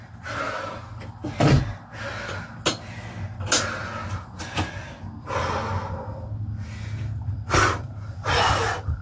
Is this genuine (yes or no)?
yes